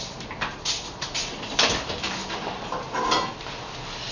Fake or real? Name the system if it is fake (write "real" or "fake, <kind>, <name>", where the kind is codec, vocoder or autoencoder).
real